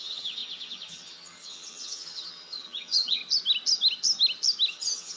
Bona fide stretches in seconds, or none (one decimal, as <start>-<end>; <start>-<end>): 3.2-4.7